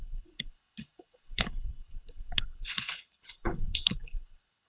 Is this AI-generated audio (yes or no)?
yes